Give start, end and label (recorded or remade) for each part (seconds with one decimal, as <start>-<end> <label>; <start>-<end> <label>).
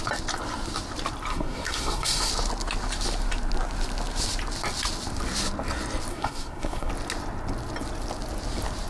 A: 0.0-1.3 recorded; 1.3-2.3 remade; 2.3-6.1 recorded; 6.1-6.9 remade; 6.9-8.9 recorded